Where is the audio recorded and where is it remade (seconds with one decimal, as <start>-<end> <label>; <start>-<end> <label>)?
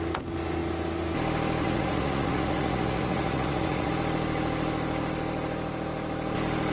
0.0-1.6 recorded; 1.6-3.9 remade; 3.9-6.7 recorded